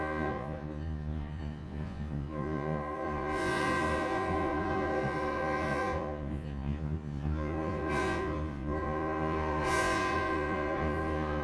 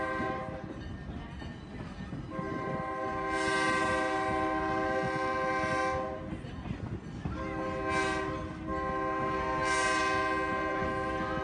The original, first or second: second